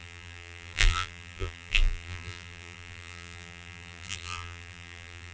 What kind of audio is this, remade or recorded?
remade